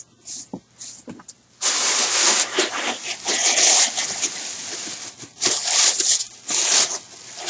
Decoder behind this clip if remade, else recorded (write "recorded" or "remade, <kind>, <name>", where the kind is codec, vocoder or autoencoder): recorded